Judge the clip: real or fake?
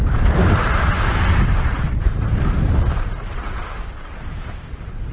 fake